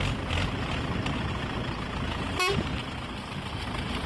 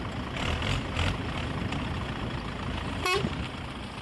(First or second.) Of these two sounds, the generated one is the second